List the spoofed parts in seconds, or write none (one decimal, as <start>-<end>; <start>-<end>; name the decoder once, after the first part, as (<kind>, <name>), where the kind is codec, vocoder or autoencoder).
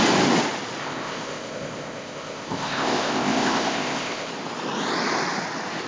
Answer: 0.8-4.3 (codec, ZipCodec)